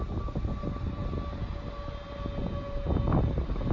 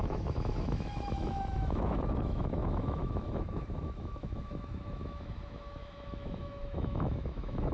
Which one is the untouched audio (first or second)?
first